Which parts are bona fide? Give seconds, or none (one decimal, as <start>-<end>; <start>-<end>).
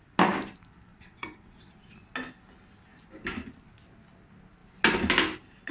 0.0-0.9; 1.7-5.7